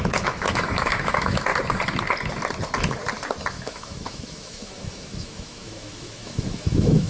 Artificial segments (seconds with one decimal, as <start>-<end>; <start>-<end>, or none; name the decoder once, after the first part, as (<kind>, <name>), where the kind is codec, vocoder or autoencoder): 0.0-1.5 (autoencoder, DAC-VAE); 3.5-7.1